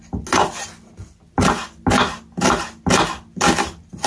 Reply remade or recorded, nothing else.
recorded